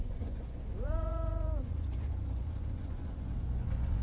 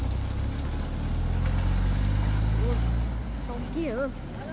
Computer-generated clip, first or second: first